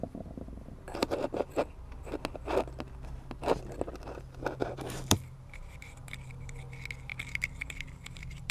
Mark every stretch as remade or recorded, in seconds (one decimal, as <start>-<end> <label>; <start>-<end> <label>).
0.0-1.0 recorded; 1.0-1.5 remade; 1.5-4.6 recorded; 4.6-6.6 remade; 6.6-7.1 recorded; 7.1-8.5 remade

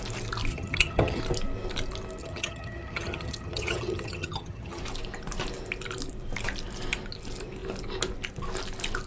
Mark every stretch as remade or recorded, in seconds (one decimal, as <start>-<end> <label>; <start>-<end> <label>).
0.0-0.5 recorded; 0.5-1.2 remade; 1.2-2.2 recorded; 2.2-4.8 remade; 4.8-9.1 recorded